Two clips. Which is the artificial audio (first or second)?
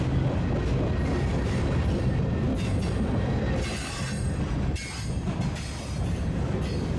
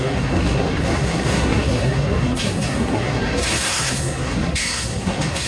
second